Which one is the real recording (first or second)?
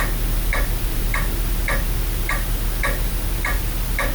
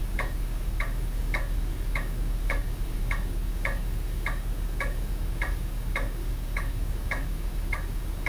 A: first